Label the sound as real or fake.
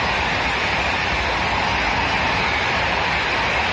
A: real